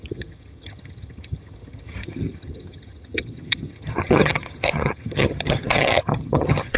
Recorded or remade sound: remade